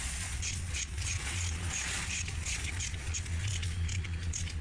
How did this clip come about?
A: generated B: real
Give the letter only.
A